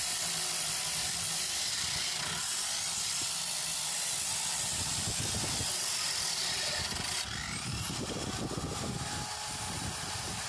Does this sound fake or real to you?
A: fake